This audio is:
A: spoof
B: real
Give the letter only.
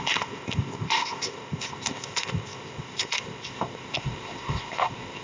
A